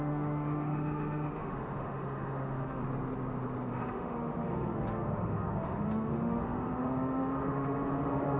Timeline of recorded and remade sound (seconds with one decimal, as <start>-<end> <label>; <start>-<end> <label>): 0.0-2.8 remade; 2.8-3.7 recorded; 3.7-8.4 remade